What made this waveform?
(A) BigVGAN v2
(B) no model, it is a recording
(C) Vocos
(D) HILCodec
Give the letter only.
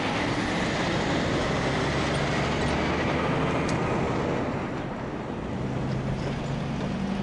B